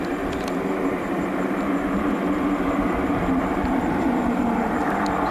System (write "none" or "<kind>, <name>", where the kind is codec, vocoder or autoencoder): vocoder, BigVGAN v2